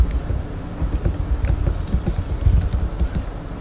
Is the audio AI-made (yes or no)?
no